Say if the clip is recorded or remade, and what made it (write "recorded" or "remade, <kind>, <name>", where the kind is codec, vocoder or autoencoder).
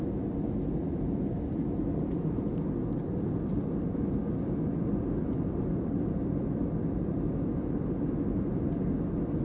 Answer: recorded